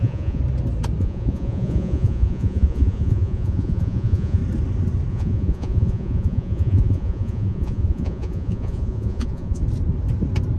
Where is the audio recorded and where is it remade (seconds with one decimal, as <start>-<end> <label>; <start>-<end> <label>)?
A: 0.0-0.4 remade; 0.4-1.0 recorded; 1.0-4.4 remade; 4.4-5.1 recorded; 5.1-9.6 remade; 9.6-10.6 recorded